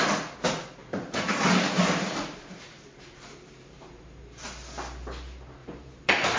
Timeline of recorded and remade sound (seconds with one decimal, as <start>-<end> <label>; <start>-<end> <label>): 0.0-0.8 recorded; 0.8-4.2 remade; 4.2-5.6 recorded; 5.6-6.4 remade